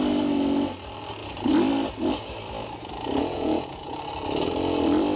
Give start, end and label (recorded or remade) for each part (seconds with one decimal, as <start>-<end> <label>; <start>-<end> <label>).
0.0-3.2 recorded; 3.2-3.9 remade; 3.9-5.2 recorded